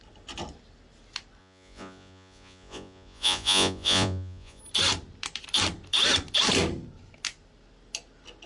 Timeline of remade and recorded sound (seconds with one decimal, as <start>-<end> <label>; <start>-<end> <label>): 0.0-1.4 recorded; 1.4-4.6 remade; 4.6-8.5 recorded